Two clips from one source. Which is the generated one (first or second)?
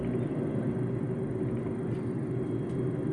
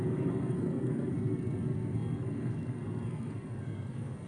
second